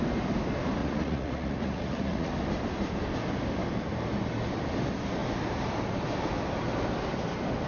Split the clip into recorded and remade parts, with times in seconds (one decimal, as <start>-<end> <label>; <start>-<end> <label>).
0.0-0.8 recorded; 0.8-2.3 remade; 2.3-7.7 recorded